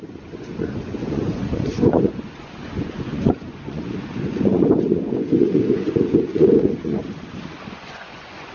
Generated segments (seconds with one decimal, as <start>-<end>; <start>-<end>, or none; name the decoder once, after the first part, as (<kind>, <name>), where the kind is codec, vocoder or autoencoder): 0.0-7.0 (vocoder, Vocos); 7.7-8.5